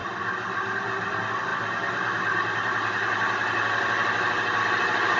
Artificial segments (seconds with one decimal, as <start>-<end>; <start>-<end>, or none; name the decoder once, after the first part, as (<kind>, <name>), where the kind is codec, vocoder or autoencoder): none